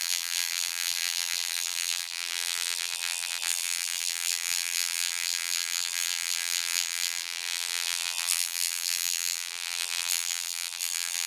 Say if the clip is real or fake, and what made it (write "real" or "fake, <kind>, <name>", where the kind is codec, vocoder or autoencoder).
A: fake, vocoder, BigVGAN v2